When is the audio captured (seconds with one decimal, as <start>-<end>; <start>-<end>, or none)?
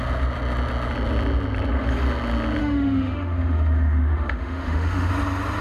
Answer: 0.0-2.6; 5.1-5.6